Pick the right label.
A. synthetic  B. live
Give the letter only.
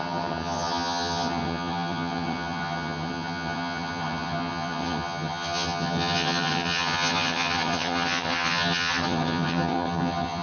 A